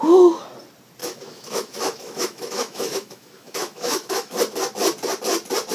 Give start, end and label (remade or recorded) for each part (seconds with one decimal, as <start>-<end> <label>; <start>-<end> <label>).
0.0-1.0 recorded; 1.0-4.4 remade; 4.4-5.7 recorded